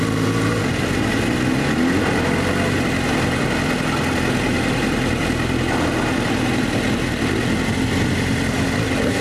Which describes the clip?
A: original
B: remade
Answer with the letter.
A